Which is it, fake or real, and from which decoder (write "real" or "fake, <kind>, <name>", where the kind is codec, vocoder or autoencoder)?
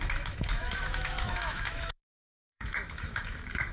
fake, autoencoder, DAC-VAE